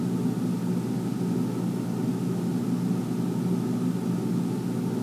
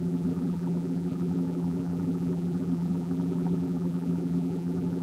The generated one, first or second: second